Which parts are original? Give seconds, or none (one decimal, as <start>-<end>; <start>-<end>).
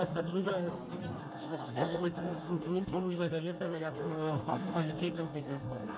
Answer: 0.5-1.2